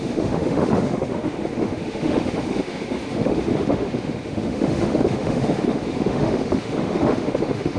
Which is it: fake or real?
fake